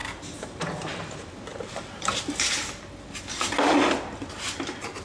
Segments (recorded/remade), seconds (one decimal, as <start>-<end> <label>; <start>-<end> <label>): 0.0-0.7 remade; 0.7-1.5 recorded; 1.5-2.9 remade; 2.9-5.0 recorded